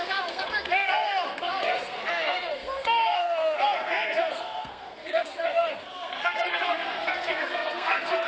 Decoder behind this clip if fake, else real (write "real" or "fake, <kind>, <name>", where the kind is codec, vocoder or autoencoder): fake, codec, SNAC